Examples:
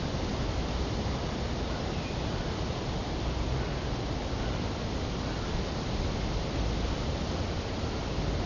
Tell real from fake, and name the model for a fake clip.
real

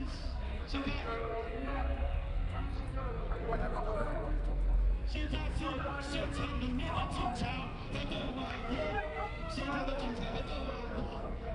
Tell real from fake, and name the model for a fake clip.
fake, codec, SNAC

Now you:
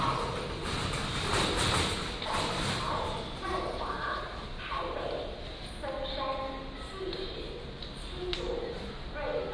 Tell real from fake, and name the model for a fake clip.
real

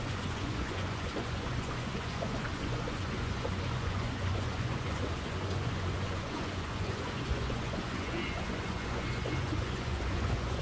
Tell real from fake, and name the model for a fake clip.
fake, vocoder, Vocos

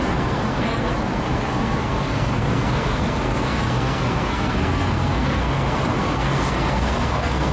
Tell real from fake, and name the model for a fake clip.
fake, codec, SNAC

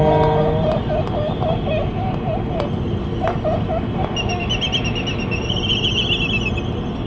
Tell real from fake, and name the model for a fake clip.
real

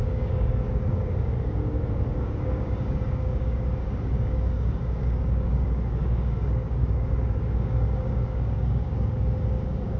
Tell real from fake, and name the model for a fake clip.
fake, codec, DAC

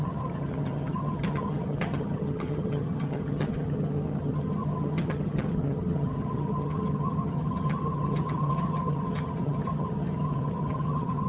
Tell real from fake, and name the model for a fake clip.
fake, vocoder, HiFi-GAN